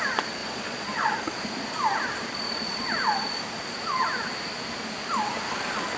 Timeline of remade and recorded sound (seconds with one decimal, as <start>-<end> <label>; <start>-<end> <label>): 0.0-0.4 recorded; 0.4-1.1 remade; 1.1-6.0 recorded